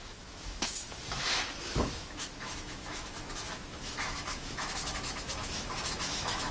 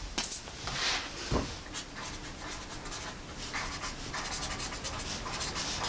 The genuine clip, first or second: second